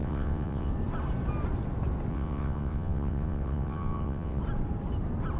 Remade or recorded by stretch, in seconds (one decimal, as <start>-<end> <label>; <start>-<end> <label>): 0.0-0.7 remade; 0.7-2.1 recorded; 2.1-4.4 remade; 4.4-5.4 recorded